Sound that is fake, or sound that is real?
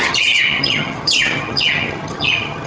fake